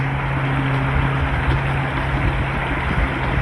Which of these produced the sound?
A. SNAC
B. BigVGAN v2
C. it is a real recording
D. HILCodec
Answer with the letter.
C